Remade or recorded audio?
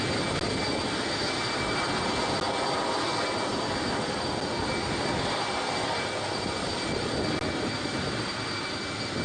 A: recorded